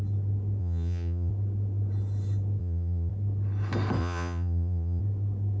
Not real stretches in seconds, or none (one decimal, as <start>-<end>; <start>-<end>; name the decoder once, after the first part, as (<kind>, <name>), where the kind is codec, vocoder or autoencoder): 0.6-1.3 (vocoder, Vocos); 2.6-3.1; 4.0-5.0